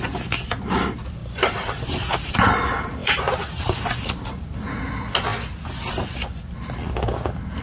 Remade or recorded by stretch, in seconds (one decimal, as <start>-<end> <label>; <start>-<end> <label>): 0.0-1.2 recorded; 1.2-2.3 remade; 2.3-3.0 recorded; 3.0-4.7 remade; 4.7-7.6 recorded